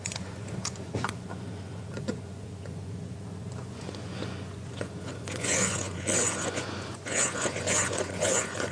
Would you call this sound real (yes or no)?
no